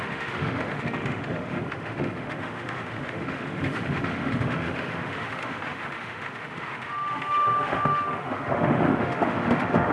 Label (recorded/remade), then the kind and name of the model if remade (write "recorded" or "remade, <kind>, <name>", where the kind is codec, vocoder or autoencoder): remade, autoencoder, DAC-VAE